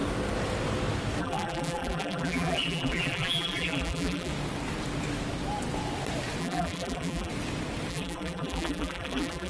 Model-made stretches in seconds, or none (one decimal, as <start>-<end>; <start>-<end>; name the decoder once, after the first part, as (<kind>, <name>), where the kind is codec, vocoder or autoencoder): 1.2-4.3 (vocoder, BigVGAN v2); 6.4-7.3; 7.9-9.5